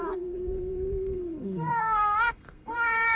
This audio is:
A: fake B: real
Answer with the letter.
A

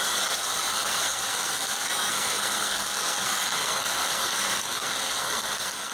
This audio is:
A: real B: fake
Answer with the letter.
B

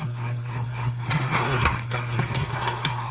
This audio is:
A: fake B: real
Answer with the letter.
A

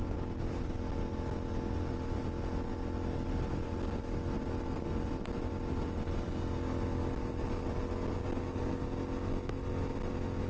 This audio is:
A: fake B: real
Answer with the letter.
B